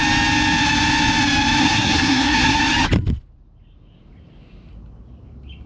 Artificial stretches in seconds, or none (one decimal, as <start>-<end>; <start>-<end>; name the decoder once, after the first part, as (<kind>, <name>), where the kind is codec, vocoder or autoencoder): 1.6-2.6 (codec, SNAC)